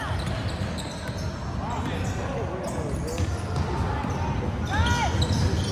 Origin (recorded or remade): recorded